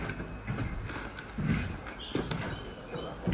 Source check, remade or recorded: recorded